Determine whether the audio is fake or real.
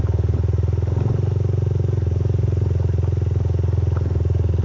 real